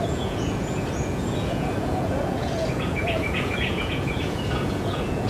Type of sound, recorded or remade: remade